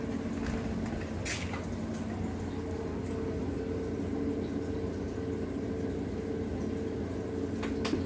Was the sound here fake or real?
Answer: real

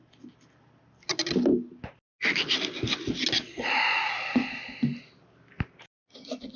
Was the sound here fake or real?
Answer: real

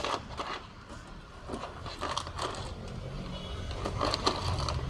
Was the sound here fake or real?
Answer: real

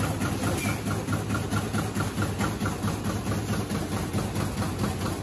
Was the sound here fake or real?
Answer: real